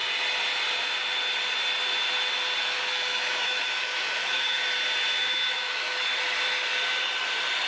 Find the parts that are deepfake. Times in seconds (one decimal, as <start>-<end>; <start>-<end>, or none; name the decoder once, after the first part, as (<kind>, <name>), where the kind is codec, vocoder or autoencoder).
2.9-4.6 (autoencoder, DAC-VAE); 5.2-6.1